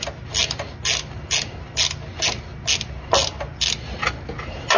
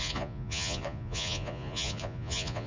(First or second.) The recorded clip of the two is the first